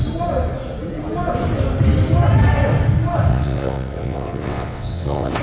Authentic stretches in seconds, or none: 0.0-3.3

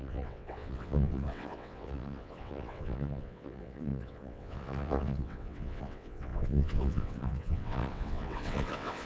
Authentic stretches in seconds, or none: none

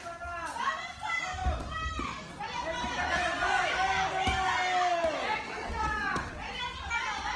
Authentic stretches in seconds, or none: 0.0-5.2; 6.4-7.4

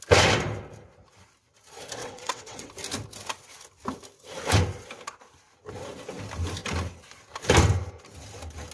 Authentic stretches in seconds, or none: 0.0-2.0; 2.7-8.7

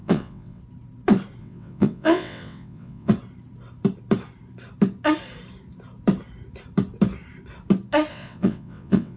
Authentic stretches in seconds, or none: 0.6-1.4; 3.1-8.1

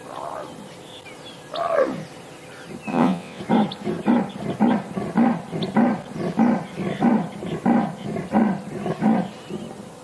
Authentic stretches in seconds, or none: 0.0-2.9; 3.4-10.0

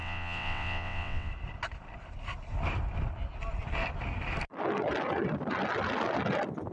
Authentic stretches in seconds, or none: 1.3-6.7